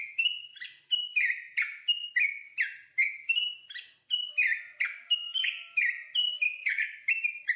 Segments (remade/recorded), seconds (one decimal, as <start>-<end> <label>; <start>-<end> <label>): 0.0-6.3 recorded; 6.3-6.8 remade; 6.8-7.6 recorded